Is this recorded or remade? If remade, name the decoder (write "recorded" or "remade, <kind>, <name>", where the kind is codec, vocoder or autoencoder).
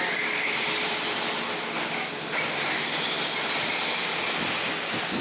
recorded